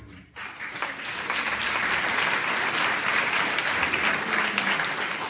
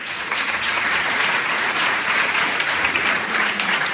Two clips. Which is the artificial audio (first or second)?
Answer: second